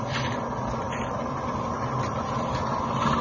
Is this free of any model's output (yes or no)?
yes